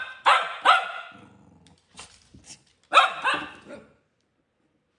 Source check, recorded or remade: recorded